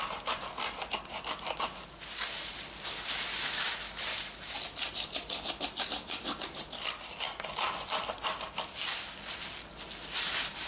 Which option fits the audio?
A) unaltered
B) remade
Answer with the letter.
A